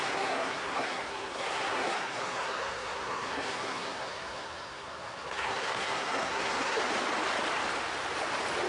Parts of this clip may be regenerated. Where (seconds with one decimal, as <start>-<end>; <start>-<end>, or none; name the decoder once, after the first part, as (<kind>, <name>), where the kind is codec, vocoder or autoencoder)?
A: 0.0-6.8 (codec, SNAC)